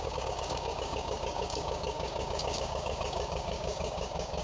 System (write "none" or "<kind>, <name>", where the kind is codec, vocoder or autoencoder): codec, DAC